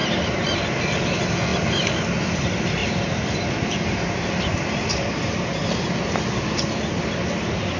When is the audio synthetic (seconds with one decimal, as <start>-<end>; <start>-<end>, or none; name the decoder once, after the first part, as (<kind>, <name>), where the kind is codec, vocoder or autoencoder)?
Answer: 0.0-0.6 (vocoder, BigVGAN v2); 2.8-6.6